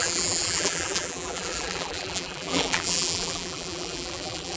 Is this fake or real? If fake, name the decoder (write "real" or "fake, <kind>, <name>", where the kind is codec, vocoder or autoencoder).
fake, vocoder, BigVGAN v2